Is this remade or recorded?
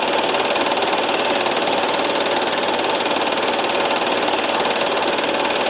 recorded